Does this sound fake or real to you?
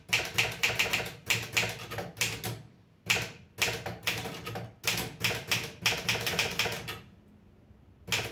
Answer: real